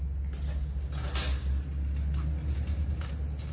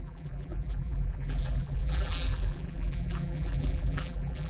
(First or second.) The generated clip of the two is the second